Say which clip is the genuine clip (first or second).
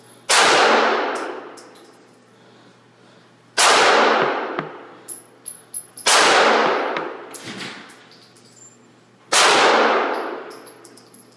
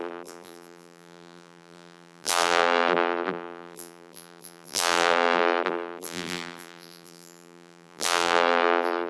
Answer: first